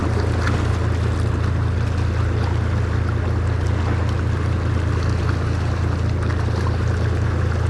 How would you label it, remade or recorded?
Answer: recorded